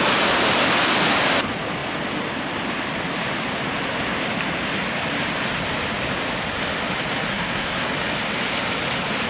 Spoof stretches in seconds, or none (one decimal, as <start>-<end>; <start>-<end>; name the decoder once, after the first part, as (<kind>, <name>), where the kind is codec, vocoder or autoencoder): 7.3-7.9 (codec, SNAC)